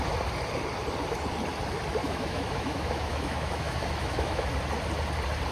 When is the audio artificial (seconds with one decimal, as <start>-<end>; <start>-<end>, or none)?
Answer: 2.0-4.5